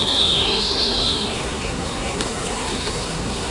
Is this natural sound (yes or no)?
no